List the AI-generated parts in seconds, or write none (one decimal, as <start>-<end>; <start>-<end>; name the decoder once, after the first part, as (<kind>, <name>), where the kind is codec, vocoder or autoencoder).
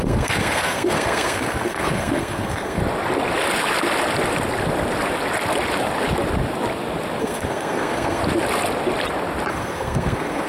0.0-2.8 (codec, SNAC); 7.2-8.2; 9.5-10.5